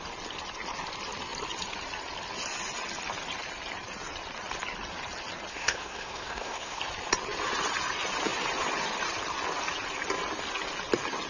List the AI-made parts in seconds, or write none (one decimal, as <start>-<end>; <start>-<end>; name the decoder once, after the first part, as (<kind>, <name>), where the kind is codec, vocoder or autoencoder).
5.5-6.8 (codec, SNAC)